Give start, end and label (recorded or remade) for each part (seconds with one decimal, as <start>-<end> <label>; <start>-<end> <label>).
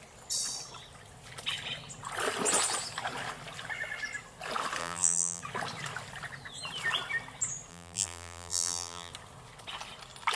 0.0-4.8 recorded; 4.8-5.4 remade; 5.4-7.7 recorded; 7.7-9.1 remade; 9.1-10.4 recorded